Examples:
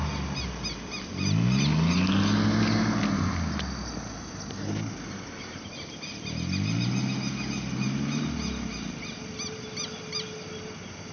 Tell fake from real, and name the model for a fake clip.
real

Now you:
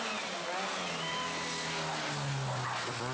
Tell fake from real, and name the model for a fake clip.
real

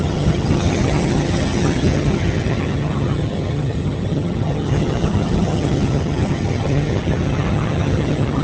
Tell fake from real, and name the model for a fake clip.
fake, vocoder, HiFi-GAN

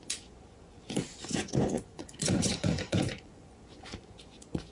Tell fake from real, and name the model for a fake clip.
fake, vocoder, Vocos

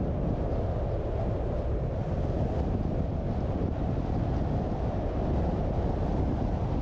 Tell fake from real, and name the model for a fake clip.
real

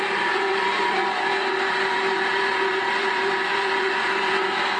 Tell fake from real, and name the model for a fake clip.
fake, vocoder, BigVGAN v2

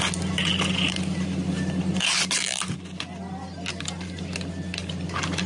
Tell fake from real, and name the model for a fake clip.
real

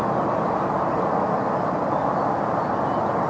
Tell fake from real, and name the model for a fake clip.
real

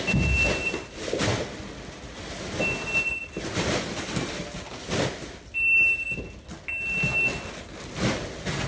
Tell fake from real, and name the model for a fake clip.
real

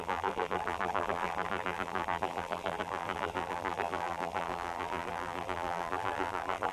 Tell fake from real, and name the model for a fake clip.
fake, vocoder, BigVGAN v2